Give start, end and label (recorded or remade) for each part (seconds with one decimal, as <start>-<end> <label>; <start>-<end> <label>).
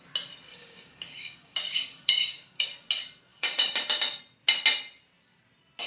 0.0-0.5 recorded; 0.5-2.7 remade; 2.7-3.3 recorded; 3.3-4.2 remade; 4.2-5.9 recorded